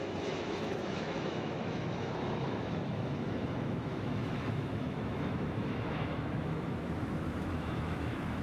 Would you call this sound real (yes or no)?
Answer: no